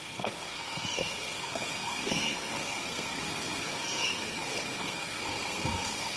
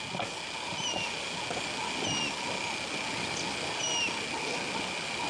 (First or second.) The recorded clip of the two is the second